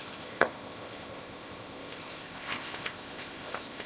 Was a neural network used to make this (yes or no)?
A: yes